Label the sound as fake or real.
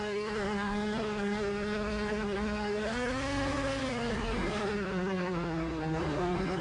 fake